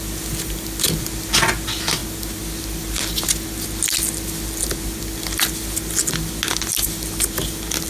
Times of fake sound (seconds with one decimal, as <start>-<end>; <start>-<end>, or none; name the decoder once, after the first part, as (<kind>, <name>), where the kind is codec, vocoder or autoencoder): none